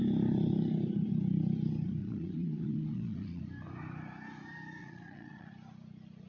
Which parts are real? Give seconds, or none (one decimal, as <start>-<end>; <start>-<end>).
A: 0.0-2.0; 3.4-4.8; 5.5-6.3